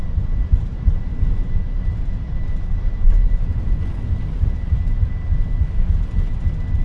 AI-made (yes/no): no